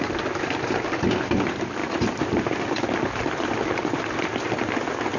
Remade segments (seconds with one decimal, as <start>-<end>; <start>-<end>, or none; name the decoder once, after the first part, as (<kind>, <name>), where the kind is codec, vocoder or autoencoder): 1.8-2.6 (vocoder, BigVGAN v2)